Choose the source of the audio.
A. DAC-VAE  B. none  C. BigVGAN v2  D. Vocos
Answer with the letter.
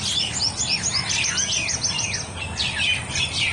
B